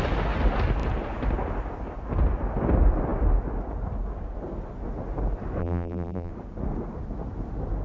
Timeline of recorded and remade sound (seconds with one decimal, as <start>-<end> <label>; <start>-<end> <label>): 0.0-5.6 recorded; 5.6-6.3 remade; 6.3-7.8 recorded